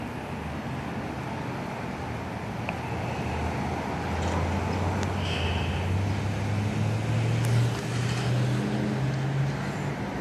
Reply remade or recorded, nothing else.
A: recorded